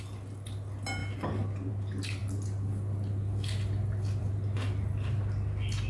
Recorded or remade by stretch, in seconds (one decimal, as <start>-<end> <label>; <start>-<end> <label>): 0.0-5.9 recorded